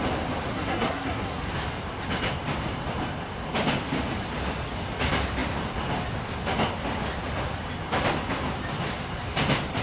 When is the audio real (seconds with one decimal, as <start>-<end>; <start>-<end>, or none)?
0.0-0.5; 1.5-9.8